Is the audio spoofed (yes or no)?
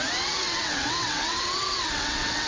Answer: yes